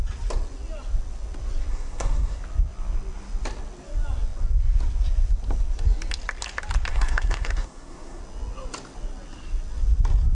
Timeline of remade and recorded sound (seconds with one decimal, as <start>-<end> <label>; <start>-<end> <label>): 0.0-1.7 recorded; 1.7-2.4 remade; 2.4-6.9 recorded; 6.9-8.2 remade; 8.2-10.3 recorded